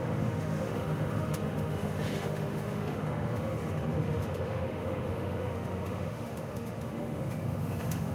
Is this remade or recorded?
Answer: remade